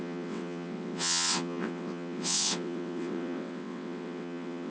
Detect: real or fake fake